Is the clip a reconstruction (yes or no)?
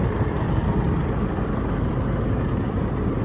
yes